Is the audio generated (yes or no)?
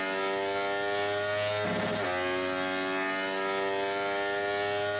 no